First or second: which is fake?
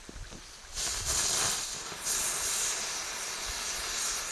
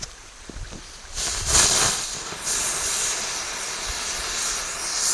second